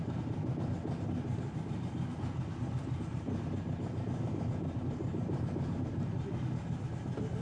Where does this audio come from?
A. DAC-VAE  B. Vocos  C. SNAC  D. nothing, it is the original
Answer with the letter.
D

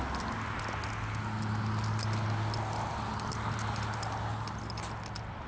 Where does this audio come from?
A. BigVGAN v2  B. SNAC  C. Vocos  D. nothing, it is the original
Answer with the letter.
D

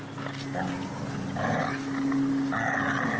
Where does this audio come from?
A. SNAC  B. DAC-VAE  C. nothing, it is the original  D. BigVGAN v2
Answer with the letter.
C